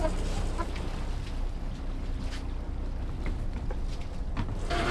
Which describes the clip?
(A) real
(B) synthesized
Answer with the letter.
A